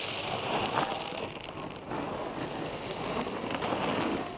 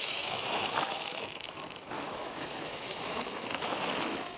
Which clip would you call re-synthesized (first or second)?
second